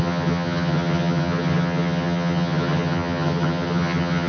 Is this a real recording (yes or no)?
no